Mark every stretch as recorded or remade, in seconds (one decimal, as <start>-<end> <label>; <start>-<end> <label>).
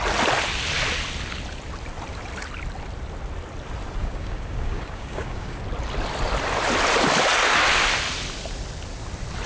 0.0-4.0 recorded; 4.0-5.6 remade; 5.6-9.5 recorded